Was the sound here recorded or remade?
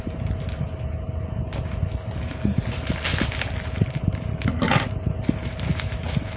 recorded